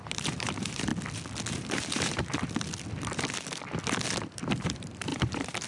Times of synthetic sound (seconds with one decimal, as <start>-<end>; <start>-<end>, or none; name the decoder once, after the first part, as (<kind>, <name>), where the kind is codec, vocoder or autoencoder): 0.0-0.9 (vocoder, BigVGAN v2); 1.5-2.3; 4.2-5.7